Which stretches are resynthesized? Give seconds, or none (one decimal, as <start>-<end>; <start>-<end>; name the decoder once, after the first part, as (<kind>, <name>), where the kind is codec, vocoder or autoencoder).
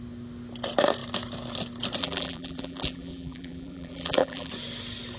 2.0-4.5 (vocoder, BigVGAN v2)